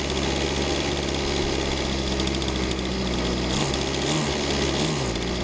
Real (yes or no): yes